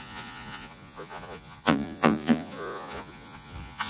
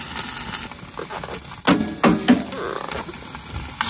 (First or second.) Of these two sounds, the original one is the second